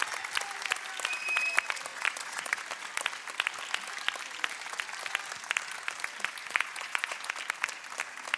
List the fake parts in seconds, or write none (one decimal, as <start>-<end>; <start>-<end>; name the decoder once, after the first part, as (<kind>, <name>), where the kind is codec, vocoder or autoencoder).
1.9-2.6 (vocoder, Vocos); 6.4-7.3